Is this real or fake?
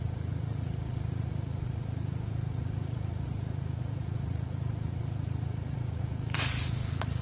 fake